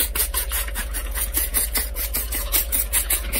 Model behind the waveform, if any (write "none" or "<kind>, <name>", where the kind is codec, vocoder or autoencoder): vocoder, Vocos